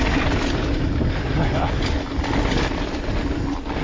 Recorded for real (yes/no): yes